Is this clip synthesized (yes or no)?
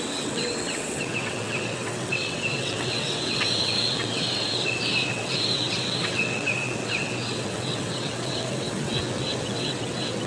yes